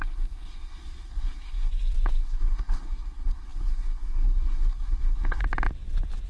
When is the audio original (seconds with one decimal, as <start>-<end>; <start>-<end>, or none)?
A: 1.7-2.2; 5.4-6.3